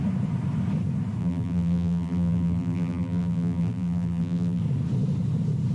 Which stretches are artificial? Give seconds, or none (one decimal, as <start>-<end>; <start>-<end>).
1.2-4.6